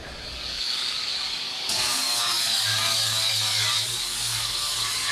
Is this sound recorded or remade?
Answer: remade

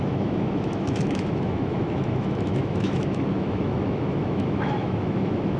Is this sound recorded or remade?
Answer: remade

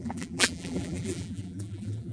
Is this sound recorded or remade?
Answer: remade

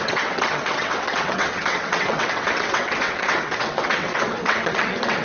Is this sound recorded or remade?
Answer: remade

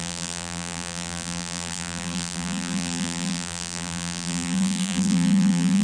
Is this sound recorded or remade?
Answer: remade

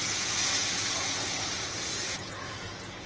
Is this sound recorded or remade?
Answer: remade